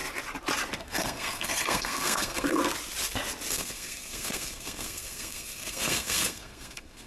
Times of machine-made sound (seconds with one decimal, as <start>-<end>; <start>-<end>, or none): 0.8-2.6; 3.5-7.1